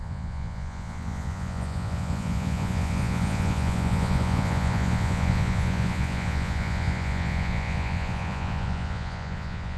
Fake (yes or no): yes